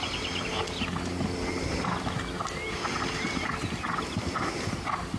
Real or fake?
real